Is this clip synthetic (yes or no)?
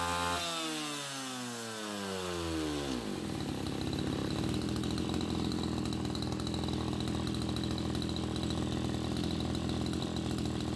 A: no